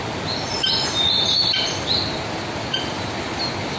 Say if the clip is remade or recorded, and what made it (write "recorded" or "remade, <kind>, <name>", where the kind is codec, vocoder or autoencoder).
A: recorded